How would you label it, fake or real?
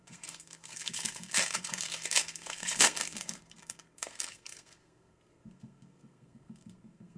fake